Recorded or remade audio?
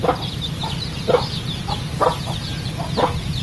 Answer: recorded